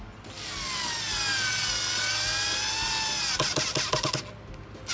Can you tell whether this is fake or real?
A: real